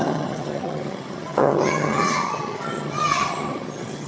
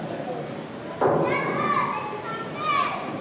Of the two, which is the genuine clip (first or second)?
second